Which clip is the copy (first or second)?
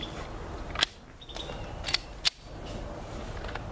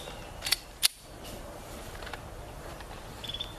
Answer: second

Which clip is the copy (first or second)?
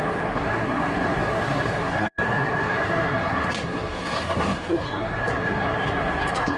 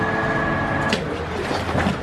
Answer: first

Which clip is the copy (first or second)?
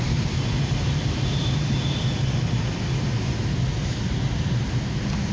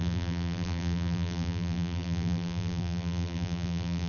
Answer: second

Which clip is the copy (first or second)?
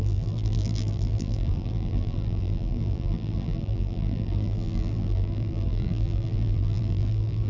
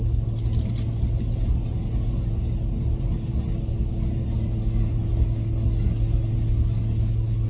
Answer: first